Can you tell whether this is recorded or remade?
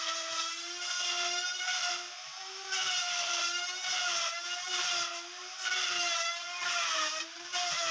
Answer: remade